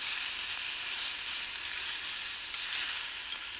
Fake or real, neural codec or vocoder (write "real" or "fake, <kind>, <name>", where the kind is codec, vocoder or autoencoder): real